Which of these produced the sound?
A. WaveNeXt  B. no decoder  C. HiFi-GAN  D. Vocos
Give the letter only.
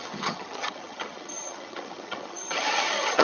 C